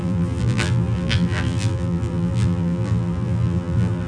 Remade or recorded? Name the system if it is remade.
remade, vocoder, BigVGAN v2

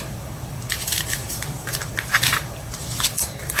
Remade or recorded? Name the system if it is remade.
remade, vocoder, BigVGAN v2